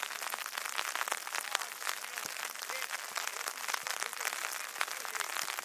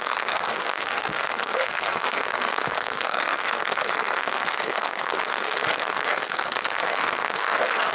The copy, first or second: second